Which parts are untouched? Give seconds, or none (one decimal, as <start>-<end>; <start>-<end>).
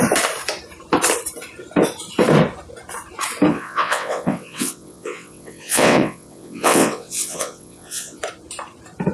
0.0-3.5; 8.2-9.1